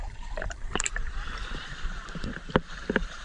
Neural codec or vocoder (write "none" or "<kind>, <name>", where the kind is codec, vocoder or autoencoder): vocoder, BigVGAN v2